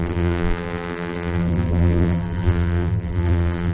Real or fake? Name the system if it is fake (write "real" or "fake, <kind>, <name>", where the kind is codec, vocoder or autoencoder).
fake, vocoder, BigVGAN v2